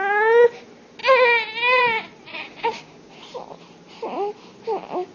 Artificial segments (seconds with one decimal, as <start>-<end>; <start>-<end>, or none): 2.3-3.1